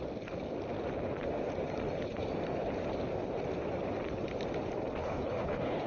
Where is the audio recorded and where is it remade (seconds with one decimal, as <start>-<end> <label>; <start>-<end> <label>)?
0.0-5.0 recorded; 5.0-5.9 remade